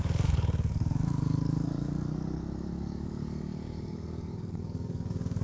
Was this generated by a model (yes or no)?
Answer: yes